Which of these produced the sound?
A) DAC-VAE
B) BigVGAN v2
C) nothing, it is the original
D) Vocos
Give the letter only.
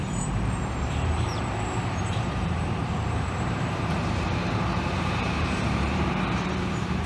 B